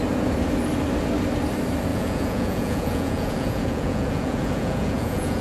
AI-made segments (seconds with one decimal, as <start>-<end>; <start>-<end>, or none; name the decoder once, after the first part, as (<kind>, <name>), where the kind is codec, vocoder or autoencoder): 1.9-5.4 (vocoder, Vocos)